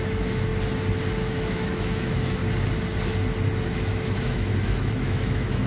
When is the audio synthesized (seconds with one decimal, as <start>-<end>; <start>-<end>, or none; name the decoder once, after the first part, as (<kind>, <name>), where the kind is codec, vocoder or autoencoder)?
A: 0.0-0.5 (autoencoder, DAC-VAE); 1.2-2.4; 3.6-5.7